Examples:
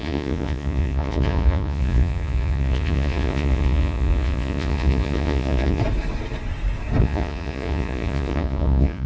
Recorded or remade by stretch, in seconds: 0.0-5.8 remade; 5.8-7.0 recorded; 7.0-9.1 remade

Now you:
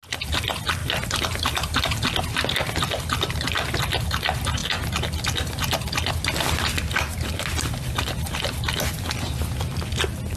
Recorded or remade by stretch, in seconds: 0.0-10.4 recorded

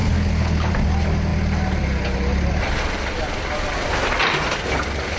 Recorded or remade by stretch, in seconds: 0.0-0.7 remade; 0.7-5.2 recorded

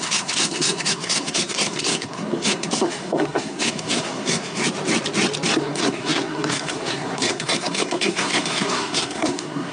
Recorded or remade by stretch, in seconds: 0.0-4.6 remade; 4.6-5.6 recorded; 5.6-9.7 remade

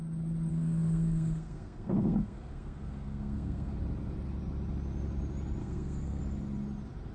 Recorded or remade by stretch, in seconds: 0.0-0.5 recorded; 0.5-3.7 remade; 3.7-5.6 recorded; 5.6-6.2 remade; 6.2-7.1 recorded

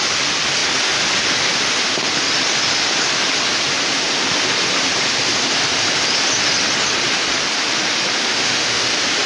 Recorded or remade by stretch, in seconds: 0.0-8.2 recorded; 8.2-8.9 remade; 8.9-9.3 recorded

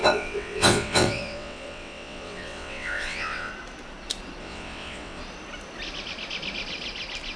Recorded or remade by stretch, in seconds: 0.0-3.5 remade; 3.5-4.4 recorded; 4.4-5.2 remade; 5.2-7.4 recorded